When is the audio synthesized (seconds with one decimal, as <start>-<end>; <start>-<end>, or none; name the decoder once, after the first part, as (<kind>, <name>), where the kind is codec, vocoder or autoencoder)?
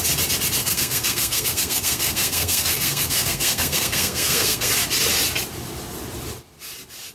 0.6-4.7 (codec, SNAC)